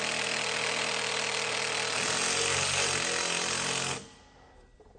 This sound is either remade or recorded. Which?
recorded